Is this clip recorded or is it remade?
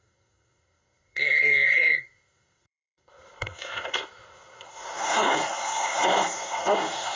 remade